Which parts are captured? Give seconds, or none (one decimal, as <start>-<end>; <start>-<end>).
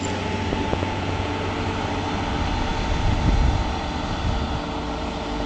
0.0-0.7; 1.3-5.5